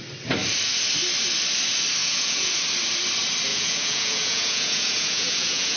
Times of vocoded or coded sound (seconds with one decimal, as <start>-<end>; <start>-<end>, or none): 2.0-2.5; 3.5-5.8